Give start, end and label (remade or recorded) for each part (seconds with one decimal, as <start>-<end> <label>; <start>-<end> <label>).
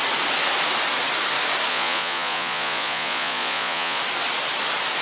0.0-1.7 recorded; 1.7-4.0 remade; 4.0-5.0 recorded